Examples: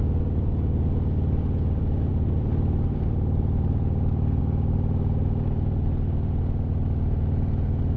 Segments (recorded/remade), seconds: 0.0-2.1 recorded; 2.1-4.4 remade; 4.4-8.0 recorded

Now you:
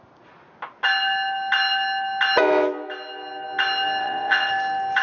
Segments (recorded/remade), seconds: 0.0-4.0 recorded; 4.0-4.5 remade; 4.5-5.0 recorded

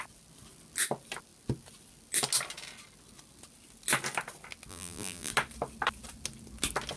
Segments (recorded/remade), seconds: 0.0-4.7 recorded; 4.7-5.3 remade; 5.3-7.0 recorded

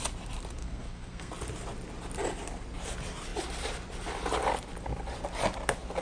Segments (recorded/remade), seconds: 0.0-0.6 recorded; 0.6-1.3 remade; 1.3-6.0 recorded

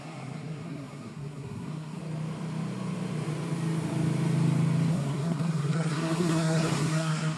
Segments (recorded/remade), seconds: 0.0-2.0 remade; 2.0-4.9 recorded; 4.9-7.4 remade